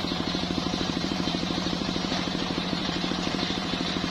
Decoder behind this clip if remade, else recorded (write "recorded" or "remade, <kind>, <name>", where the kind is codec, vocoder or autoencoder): remade, vocoder, BigVGAN v2